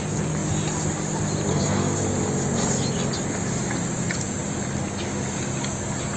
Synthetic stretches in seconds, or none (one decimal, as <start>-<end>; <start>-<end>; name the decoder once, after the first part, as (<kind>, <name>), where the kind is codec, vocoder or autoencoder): 1.5-2.0 (codec, SNAC)